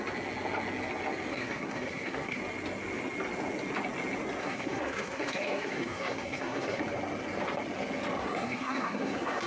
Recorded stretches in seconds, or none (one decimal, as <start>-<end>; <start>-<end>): 0.0-1.3; 2.4-4.4; 6.8-8.2